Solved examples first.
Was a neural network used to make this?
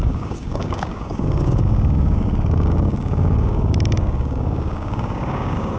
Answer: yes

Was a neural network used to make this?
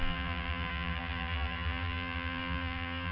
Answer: yes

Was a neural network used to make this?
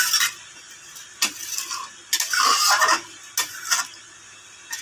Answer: no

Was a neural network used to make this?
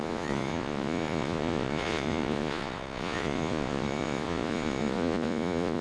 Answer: yes